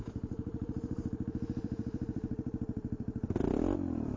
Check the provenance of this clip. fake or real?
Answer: fake